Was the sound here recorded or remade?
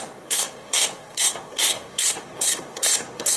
remade